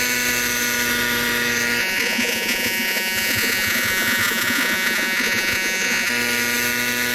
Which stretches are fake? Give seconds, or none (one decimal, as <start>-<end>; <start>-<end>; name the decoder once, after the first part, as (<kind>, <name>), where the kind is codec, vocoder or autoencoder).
1.8-6.1 (vocoder, Vocos)